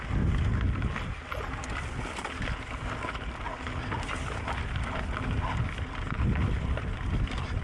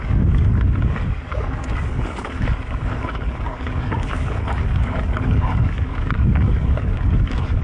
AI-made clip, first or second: second